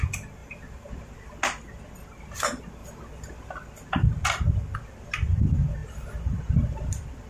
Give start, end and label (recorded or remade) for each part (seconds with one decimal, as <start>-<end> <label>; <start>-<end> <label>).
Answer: 0.0-0.4 recorded; 0.4-1.2 remade; 1.2-7.3 recorded

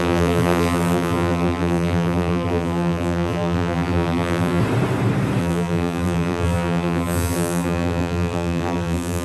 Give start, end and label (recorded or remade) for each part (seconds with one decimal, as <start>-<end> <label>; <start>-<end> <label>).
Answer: 0.0-4.6 remade; 4.6-5.4 recorded; 5.4-9.2 remade

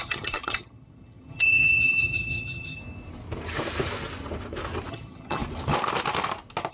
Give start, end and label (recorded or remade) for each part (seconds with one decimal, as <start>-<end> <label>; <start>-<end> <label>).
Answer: 0.0-2.8 remade; 2.8-4.9 recorded; 4.9-5.4 remade; 5.4-6.7 recorded

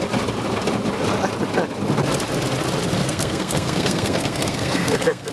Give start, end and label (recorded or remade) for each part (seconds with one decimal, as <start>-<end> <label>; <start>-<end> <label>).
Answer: 0.0-3.0 recorded; 3.0-5.3 remade